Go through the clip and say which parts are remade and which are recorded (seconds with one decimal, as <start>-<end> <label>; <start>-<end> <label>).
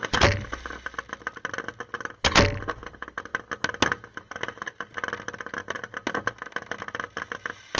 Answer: 0.0-7.8 recorded